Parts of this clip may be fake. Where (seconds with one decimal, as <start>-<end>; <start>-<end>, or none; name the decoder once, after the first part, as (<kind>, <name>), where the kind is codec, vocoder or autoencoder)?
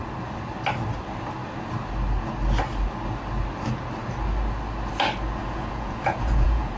5.4-6.8 (vocoder, Vocos)